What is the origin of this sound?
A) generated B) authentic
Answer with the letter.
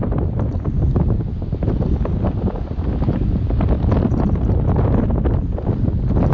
B